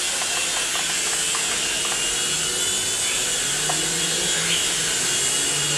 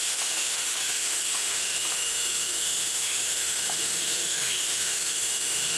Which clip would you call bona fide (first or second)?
first